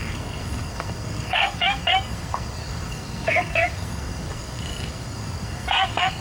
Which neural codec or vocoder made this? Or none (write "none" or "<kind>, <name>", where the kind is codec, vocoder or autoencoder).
codec, SNAC